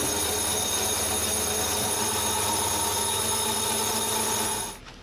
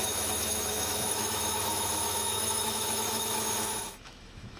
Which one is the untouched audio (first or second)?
first